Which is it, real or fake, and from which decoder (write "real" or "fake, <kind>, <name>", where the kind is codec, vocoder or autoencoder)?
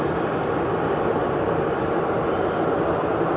real